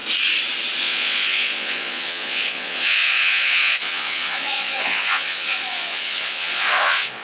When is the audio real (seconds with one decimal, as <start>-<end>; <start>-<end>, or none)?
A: 0.0-0.8